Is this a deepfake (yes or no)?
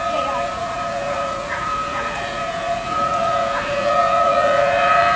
yes